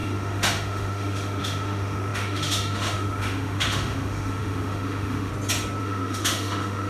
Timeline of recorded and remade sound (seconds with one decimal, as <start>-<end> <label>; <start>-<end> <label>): 0.0-5.3 remade; 5.3-5.8 recorded; 5.8-6.9 remade